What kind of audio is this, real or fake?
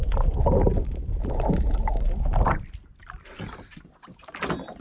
real